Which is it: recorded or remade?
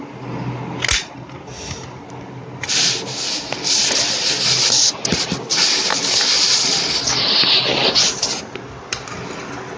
recorded